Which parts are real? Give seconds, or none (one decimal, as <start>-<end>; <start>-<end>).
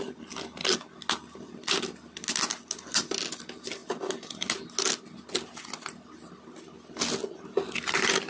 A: 0.0-8.3